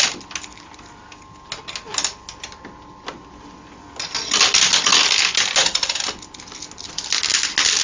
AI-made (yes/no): no